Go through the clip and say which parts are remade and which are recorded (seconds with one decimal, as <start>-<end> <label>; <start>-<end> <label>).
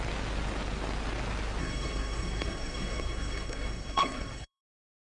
0.0-1.6 recorded; 1.6-4.6 remade; 4.6-5.0 recorded